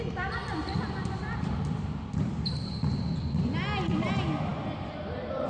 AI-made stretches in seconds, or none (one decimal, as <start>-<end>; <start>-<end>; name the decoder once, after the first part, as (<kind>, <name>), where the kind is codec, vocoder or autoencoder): 1.0-2.5 (vocoder, BigVGAN v2)